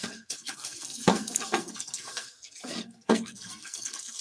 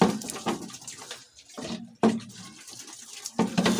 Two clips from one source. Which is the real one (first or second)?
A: second